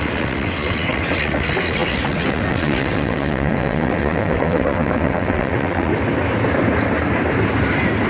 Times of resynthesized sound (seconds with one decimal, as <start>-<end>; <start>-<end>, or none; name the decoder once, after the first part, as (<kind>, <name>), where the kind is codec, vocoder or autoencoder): 0.0-5.9 (vocoder, WaveNeXt)